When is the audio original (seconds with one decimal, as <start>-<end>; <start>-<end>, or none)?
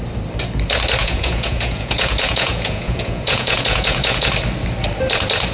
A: 0.0-1.0; 4.3-5.5